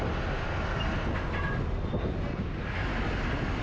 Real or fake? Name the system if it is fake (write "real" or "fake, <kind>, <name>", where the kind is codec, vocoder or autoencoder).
real